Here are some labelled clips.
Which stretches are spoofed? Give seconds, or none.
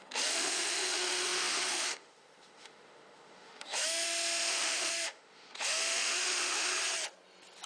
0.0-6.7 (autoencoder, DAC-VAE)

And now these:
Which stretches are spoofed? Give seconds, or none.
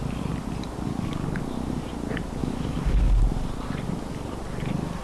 0.9-1.4 (codec, DAC); 2.4-3.2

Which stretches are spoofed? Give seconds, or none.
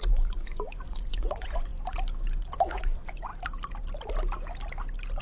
0.0-1.7 (vocoder, Vocos); 2.4-3.3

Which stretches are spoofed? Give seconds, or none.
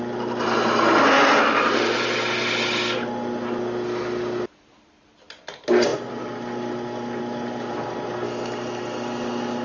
none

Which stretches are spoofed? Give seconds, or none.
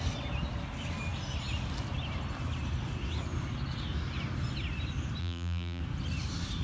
5.2-5.8 (vocoder, BigVGAN v2)